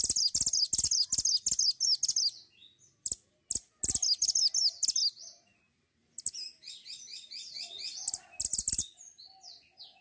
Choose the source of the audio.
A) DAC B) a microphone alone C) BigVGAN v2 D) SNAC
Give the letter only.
B